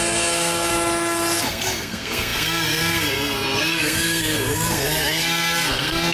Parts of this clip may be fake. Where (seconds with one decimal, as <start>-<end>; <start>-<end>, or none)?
0.0-0.7; 1.4-6.1